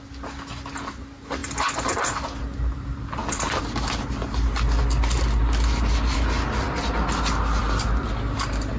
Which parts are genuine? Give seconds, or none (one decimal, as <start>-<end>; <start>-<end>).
0.0-8.8

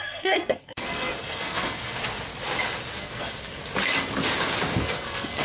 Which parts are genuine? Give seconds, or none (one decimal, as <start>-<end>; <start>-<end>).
2.0-3.0; 3.6-4.8

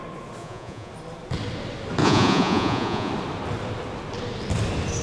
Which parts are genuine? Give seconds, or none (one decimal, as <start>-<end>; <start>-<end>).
0.0-0.4; 0.9-2.0; 3.1-5.0

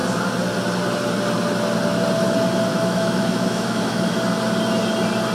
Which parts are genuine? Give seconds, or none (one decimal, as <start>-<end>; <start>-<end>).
0.0-2.7; 4.1-5.3